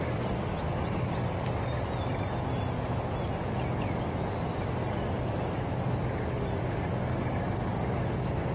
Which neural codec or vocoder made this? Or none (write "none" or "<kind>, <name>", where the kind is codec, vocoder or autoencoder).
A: none